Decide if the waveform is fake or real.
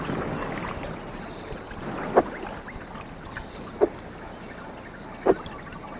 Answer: real